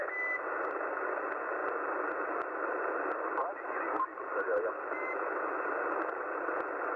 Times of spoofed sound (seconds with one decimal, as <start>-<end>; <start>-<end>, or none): none